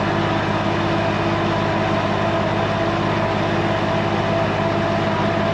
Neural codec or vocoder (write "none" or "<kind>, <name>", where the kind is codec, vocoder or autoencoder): none